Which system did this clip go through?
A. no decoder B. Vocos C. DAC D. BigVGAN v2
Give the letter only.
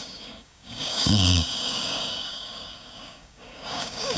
C